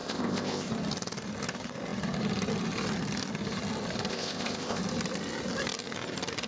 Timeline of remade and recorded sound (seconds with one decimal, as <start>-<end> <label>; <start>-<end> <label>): 0.0-0.7 remade; 0.7-4.1 recorded; 4.1-4.8 remade; 4.8-6.5 recorded